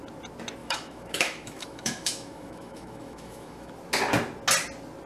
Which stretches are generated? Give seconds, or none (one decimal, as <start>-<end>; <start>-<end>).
0.6-3.7